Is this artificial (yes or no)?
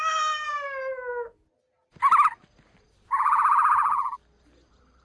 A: no